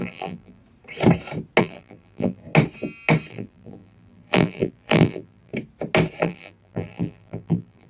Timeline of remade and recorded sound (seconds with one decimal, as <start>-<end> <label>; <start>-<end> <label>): 0.0-0.6 remade; 0.6-1.6 recorded; 1.6-2.4 remade; 2.4-3.3 recorded; 3.3-5.5 remade; 5.5-6.2 recorded; 6.2-7.9 remade